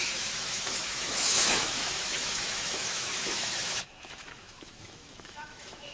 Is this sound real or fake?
fake